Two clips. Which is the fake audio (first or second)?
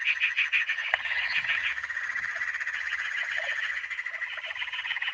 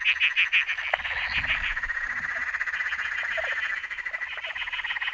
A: first